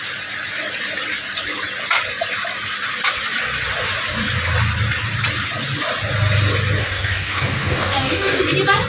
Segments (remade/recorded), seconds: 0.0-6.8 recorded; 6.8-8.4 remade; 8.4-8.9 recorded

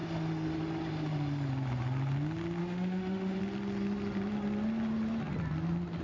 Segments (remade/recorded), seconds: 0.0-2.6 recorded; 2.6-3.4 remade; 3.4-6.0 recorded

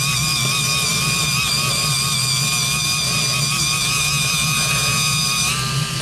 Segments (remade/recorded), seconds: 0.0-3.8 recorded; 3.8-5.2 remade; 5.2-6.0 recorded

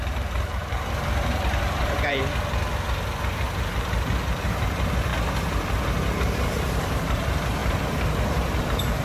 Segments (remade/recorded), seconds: 0.0-2.2 remade; 2.2-3.3 recorded; 3.3-5.1 remade; 5.1-6.1 recorded; 6.1-9.0 remade